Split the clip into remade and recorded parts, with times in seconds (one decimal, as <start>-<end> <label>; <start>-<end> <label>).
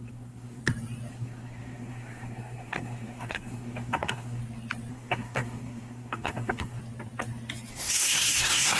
0.0-0.6 remade; 0.6-1.1 recorded; 1.1-4.4 remade; 4.4-4.9 recorded; 4.9-6.8 remade; 6.8-7.7 recorded; 7.7-8.8 remade